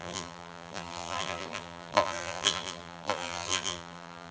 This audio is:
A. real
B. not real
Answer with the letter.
B